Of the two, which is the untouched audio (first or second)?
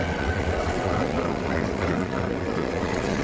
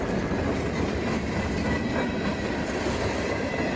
second